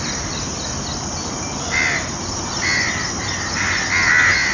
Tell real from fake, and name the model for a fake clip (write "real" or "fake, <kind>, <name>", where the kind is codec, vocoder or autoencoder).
real